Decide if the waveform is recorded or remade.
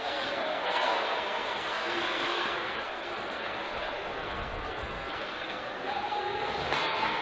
remade